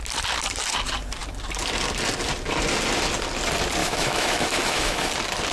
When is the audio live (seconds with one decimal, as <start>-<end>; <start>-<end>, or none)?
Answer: 0.0-3.8; 5.1-5.5